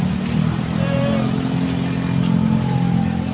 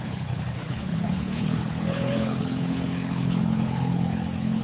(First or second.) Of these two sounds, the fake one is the second